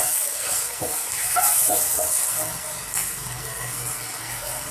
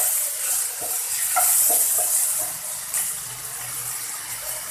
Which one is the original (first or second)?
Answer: second